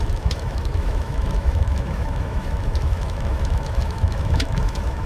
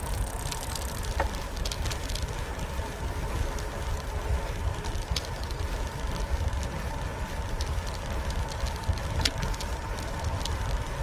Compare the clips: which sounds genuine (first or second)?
second